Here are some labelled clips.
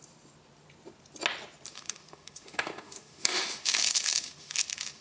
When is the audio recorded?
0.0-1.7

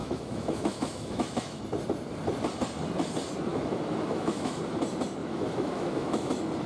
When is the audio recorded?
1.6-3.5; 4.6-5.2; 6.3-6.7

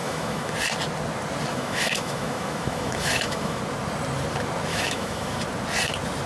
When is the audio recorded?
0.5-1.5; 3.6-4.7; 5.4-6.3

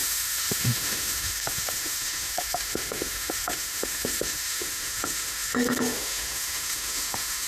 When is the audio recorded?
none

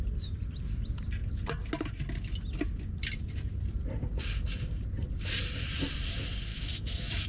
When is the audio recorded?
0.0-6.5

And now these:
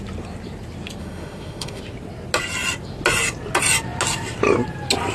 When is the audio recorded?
0.0-1.0; 1.8-5.1

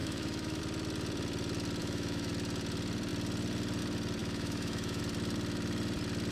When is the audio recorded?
0.6-1.8; 2.3-4.2; 5.0-6.3